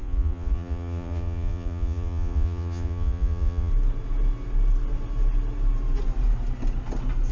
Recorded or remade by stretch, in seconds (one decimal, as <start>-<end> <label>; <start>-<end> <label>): 0.0-3.7 remade; 3.7-7.3 recorded